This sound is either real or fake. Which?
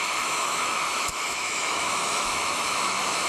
fake